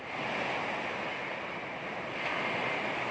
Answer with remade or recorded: recorded